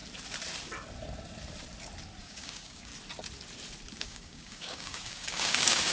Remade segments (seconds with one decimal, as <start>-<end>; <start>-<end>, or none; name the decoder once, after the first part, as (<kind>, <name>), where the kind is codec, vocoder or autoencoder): 2.2-2.9 (codec, DAC); 4.0-5.9